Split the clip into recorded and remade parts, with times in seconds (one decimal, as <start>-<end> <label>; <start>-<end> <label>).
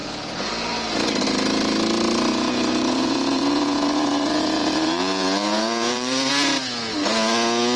0.0-0.5 remade; 0.5-2.3 recorded; 2.3-6.3 remade; 6.3-7.8 recorded